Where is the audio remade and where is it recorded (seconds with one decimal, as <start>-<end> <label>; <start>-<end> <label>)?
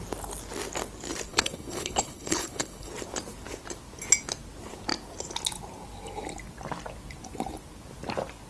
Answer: 0.0-1.3 recorded; 1.3-2.9 remade; 2.9-8.5 recorded